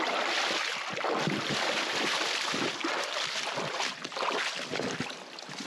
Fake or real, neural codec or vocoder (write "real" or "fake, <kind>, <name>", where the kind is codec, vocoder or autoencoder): real